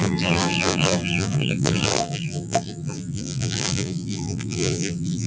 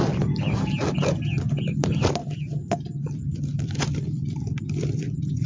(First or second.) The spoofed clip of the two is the first